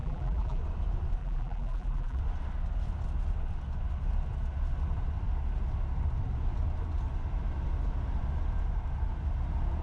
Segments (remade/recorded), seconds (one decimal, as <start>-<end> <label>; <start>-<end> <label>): 0.0-0.6 remade; 0.6-1.2 recorded; 1.2-2.2 remade; 2.2-9.8 recorded

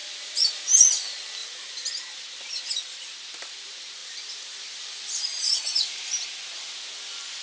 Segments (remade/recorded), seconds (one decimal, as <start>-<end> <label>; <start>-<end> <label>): 0.0-1.4 recorded; 1.4-1.9 remade; 1.9-4.0 recorded; 4.0-6.2 remade; 6.2-7.4 recorded

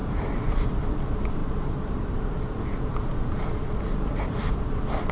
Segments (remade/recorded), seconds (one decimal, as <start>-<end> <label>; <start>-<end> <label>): 0.0-0.7 remade; 0.7-1.4 recorded; 1.4-2.6 remade; 2.6-3.9 recorded; 3.9-4.6 remade; 4.6-5.1 recorded

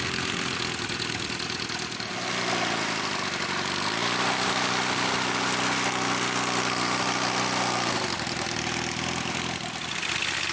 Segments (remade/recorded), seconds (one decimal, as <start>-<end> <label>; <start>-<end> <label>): 0.0-10.5 recorded

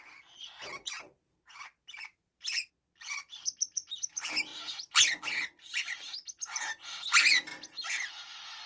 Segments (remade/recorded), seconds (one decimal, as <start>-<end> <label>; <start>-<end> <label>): 0.0-2.7 remade; 2.7-3.2 recorded; 3.2-4.0 remade; 4.0-8.7 recorded

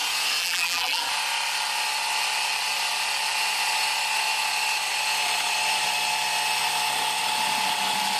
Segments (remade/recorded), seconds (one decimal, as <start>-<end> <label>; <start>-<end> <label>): 0.0-0.4 recorded; 0.4-1.0 remade; 1.0-8.2 recorded

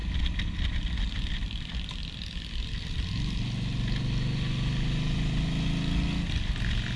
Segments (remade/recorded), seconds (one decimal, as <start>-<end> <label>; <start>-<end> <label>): 0.0-7.0 recorded